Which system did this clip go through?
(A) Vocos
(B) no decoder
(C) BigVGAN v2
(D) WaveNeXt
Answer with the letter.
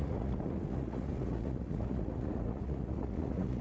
A